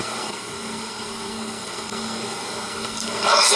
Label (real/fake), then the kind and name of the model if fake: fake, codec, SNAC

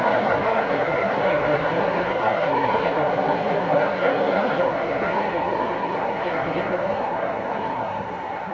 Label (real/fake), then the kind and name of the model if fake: fake, codec, SNAC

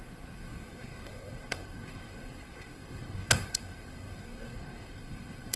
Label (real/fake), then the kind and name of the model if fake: fake, codec, SNAC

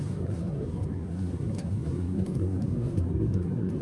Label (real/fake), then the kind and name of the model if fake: fake, codec, SNAC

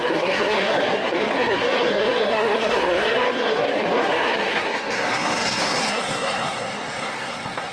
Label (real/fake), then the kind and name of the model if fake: fake, codec, SNAC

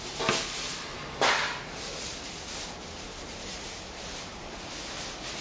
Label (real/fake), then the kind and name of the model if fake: real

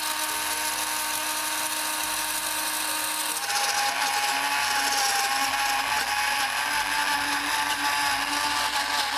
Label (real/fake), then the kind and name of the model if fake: real